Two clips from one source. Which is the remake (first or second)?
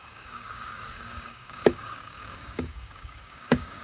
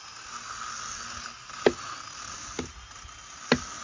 first